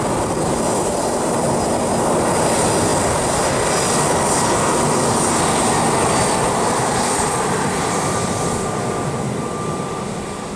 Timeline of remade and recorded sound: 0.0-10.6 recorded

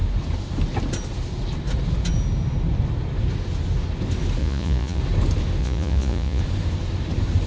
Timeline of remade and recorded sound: 0.0-4.4 recorded; 4.4-5.0 remade; 5.0-5.6 recorded; 5.6-6.4 remade; 6.4-7.5 recorded